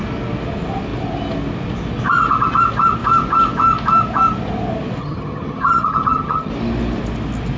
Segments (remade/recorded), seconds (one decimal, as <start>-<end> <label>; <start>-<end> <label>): 0.0-5.0 recorded; 5.0-6.5 remade; 6.5-7.6 recorded